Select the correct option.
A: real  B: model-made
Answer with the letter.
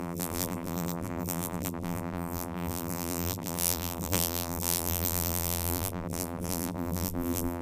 B